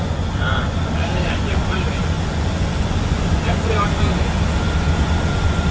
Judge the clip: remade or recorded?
remade